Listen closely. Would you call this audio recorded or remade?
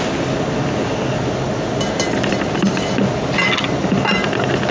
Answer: recorded